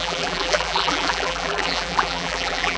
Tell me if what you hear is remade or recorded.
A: remade